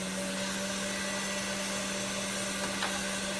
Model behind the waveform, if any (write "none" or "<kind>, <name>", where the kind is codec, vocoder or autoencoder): none